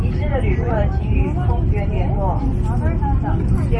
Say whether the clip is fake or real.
real